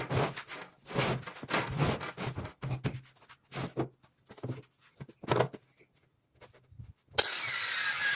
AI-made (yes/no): no